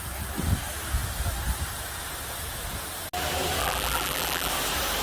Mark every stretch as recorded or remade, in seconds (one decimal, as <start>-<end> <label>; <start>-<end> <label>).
0.0-3.6 recorded; 3.6-4.5 remade; 4.5-5.0 recorded